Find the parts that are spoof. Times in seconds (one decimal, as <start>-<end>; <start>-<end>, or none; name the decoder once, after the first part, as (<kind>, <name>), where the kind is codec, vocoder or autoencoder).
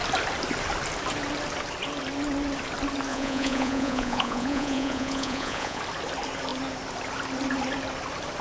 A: 3.1-5.8 (vocoder, Vocos)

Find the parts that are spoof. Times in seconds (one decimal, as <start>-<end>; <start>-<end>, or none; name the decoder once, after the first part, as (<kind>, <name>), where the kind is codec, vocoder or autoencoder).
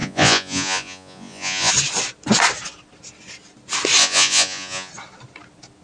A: 0.0-1.7 (vocoder, Vocos); 4.0-4.9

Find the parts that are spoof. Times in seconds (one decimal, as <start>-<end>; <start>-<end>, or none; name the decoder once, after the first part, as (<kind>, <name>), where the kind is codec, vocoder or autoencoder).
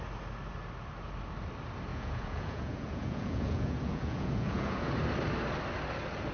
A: 1.9-4.9 (vocoder, Vocos)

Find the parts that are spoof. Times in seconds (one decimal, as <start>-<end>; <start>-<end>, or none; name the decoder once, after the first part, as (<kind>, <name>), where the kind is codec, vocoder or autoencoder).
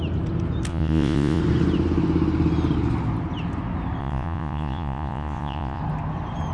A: 0.7-1.4 (vocoder, Vocos); 4.0-5.8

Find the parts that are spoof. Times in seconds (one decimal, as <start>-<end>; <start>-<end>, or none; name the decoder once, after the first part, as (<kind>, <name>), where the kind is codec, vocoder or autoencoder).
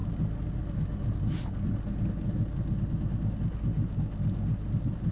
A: none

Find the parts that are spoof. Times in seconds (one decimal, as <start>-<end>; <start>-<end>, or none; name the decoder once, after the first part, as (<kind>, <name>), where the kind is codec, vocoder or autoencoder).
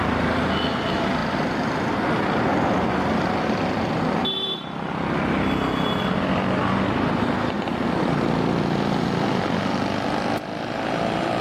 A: none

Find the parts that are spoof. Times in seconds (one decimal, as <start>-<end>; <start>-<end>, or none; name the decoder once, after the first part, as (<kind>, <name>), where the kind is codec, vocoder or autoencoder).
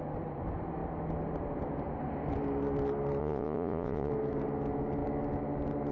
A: 3.2-4.1 (vocoder, Vocos)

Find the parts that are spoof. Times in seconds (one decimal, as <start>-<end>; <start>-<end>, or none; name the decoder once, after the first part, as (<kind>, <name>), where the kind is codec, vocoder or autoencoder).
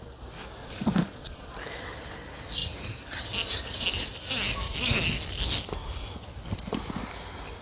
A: 0.6-1.5 (vocoder, Vocos)